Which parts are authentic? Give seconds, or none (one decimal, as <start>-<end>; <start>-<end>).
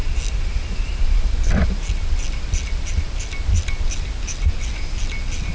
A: 0.0-5.5